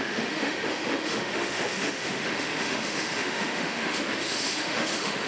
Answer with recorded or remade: remade